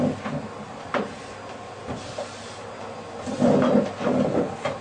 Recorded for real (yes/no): yes